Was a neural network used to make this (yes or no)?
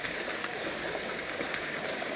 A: yes